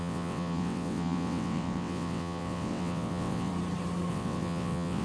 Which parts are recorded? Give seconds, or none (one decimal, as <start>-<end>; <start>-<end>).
3.5-4.1

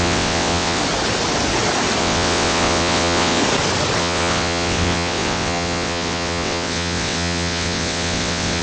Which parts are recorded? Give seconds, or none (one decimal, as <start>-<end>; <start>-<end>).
0.8-2.0; 3.4-4.0